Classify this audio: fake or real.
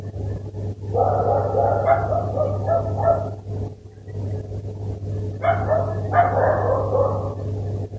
real